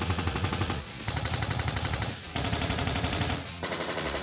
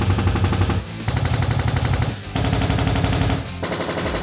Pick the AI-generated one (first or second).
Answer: first